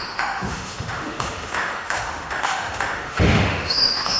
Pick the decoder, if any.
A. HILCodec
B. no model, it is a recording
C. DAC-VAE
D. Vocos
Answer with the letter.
C